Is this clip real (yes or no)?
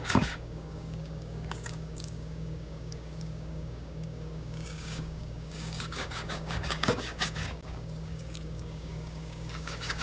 no